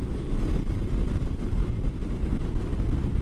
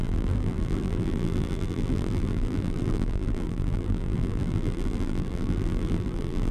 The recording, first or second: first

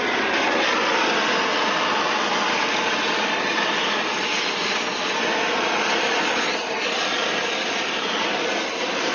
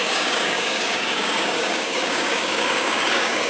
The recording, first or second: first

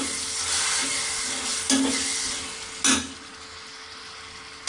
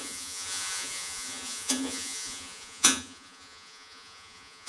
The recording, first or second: first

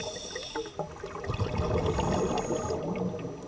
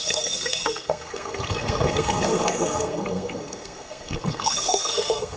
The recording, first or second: first